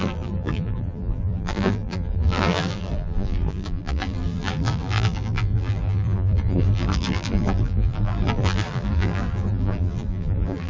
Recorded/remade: remade